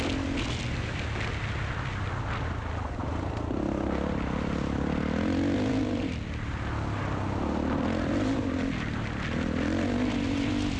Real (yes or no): yes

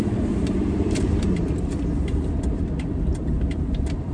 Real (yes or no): no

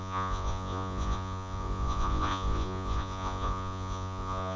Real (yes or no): no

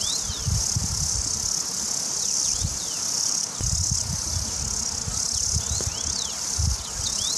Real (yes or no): yes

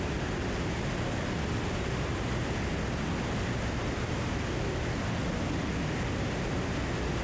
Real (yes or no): yes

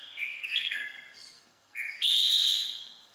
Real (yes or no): no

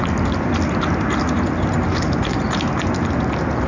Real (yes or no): yes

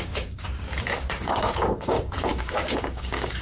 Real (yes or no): no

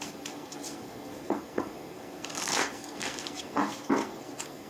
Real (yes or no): no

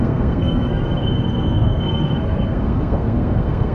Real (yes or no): no